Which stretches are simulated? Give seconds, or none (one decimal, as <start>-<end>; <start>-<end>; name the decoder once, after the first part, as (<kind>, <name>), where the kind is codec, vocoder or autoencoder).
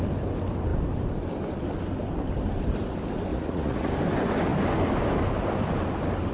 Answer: 3.3-3.9 (vocoder, Vocos)